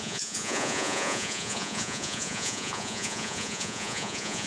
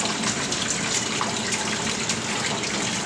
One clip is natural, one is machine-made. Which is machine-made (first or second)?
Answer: first